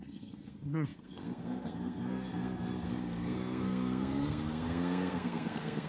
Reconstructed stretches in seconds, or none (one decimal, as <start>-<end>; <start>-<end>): 0.0-5.9